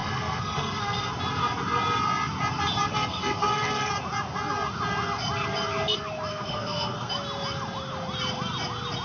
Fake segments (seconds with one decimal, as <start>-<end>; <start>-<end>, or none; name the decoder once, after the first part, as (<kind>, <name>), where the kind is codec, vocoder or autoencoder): 0.0-1.1 (codec, SNAC); 2.9-3.9; 6.3-7.1